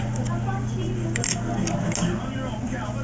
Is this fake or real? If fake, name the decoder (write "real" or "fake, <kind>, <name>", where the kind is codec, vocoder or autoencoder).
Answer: real